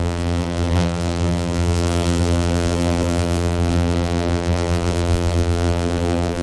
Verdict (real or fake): fake